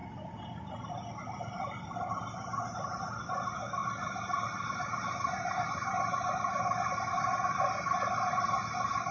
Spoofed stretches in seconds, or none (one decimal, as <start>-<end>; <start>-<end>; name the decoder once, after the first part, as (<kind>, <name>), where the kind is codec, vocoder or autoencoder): none